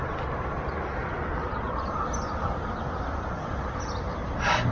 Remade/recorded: recorded